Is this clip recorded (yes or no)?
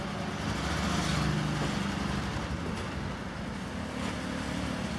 yes